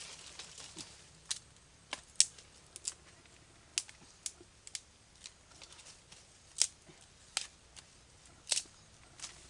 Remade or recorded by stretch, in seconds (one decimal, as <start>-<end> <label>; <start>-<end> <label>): 0.0-9.5 recorded